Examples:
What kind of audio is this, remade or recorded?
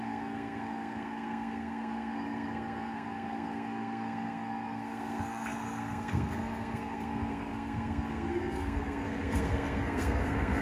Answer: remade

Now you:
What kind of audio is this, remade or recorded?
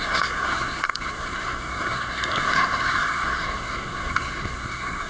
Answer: remade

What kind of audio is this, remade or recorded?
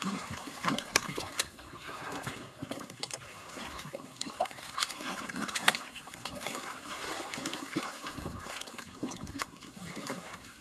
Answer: remade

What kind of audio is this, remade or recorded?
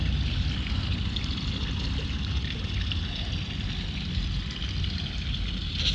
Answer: recorded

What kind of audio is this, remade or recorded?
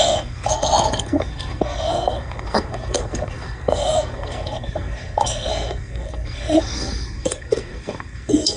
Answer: remade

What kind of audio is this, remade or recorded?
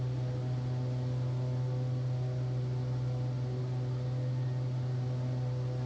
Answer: recorded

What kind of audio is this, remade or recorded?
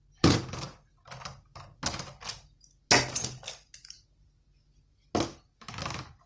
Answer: recorded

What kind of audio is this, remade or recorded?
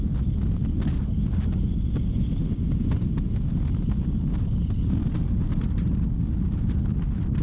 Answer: recorded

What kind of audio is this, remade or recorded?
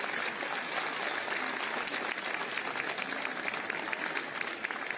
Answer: recorded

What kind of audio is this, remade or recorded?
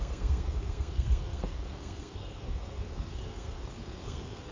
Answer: remade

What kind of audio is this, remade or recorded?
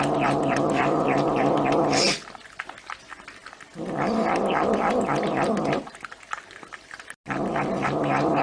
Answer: recorded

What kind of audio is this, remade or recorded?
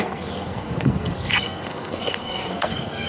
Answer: remade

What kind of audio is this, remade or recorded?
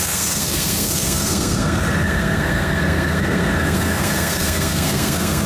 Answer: remade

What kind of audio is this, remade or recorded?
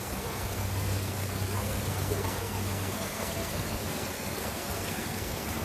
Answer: remade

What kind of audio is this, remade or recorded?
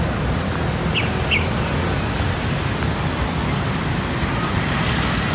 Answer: recorded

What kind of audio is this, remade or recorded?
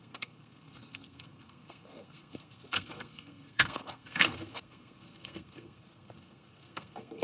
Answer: remade